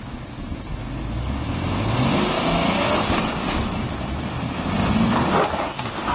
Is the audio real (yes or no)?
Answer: yes